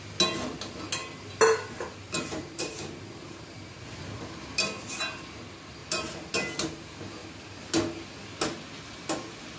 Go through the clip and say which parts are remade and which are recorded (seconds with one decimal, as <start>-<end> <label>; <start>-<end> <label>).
0.0-1.0 recorded; 1.0-4.0 remade; 4.0-5.8 recorded; 5.8-6.3 remade; 6.3-9.6 recorded